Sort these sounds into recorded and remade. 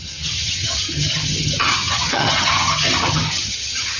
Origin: remade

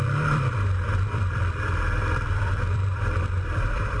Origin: remade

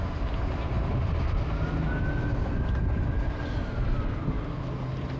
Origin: recorded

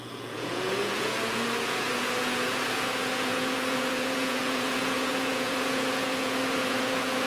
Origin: remade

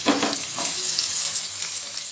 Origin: remade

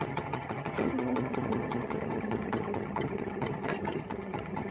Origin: remade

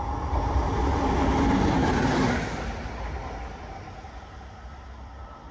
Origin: recorded